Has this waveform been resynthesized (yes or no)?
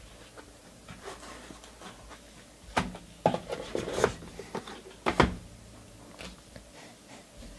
no